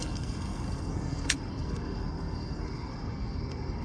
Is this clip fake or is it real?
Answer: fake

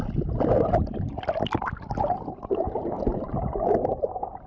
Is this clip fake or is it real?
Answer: real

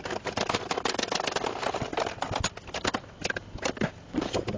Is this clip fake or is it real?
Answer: real